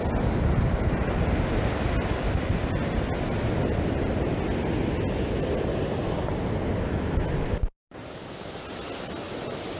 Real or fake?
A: real